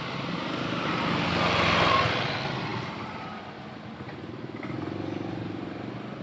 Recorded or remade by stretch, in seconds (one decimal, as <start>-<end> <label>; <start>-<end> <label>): 0.0-6.2 recorded